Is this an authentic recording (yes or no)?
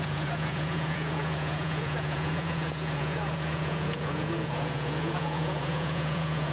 no